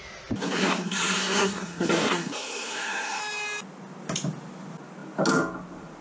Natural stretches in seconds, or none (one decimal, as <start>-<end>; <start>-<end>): 0.0-0.4; 3.2-6.0